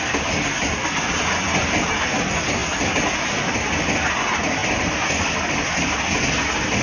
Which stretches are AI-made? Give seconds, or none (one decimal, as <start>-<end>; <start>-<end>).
none